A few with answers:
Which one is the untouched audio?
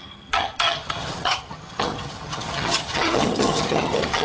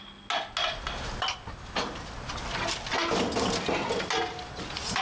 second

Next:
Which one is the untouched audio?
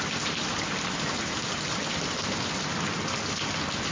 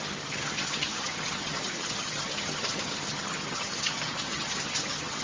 first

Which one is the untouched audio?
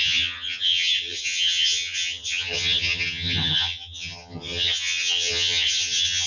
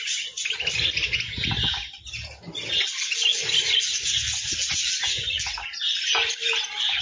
second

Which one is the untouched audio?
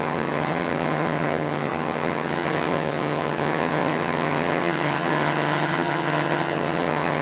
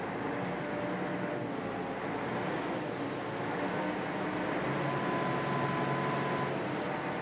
second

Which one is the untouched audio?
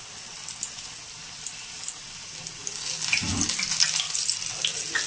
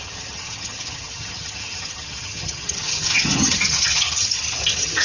first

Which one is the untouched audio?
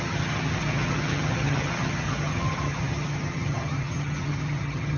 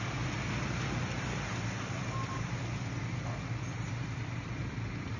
second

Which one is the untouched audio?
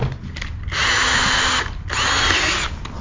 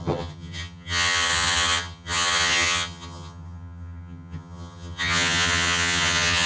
first